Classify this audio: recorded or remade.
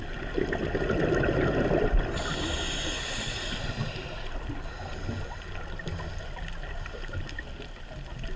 recorded